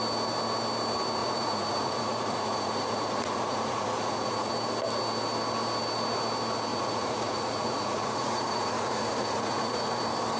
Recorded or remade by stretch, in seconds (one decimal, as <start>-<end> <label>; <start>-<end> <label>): 0.0-1.2 recorded; 1.2-4.5 remade; 4.5-6.7 recorded; 6.7-10.0 remade; 10.0-10.4 recorded